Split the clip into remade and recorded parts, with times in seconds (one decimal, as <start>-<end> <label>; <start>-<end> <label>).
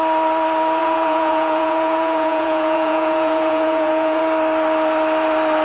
0.0-0.8 recorded; 0.8-4.2 remade; 4.2-5.6 recorded